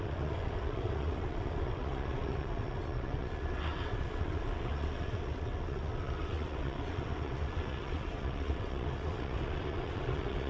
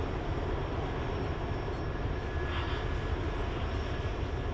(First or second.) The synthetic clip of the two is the first